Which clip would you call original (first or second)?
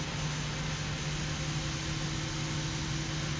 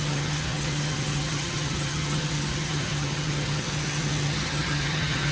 first